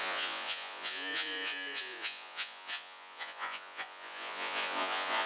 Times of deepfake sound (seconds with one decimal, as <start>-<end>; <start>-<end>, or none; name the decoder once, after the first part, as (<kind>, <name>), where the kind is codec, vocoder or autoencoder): 0.0-5.3 (vocoder, Vocos)